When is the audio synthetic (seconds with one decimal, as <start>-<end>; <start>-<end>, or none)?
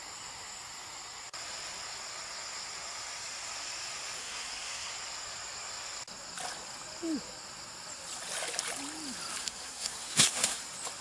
4.2-4.9; 9.4-10.6